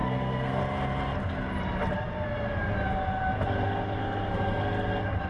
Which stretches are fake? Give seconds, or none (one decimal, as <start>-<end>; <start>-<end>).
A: 0.0-0.6; 4.0-4.6